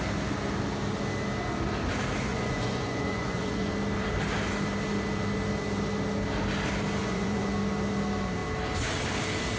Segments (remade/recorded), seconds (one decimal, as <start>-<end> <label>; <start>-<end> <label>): 0.0-2.3 recorded; 2.3-3.7 remade; 3.7-7.0 recorded; 7.0-7.5 remade; 7.5-9.6 recorded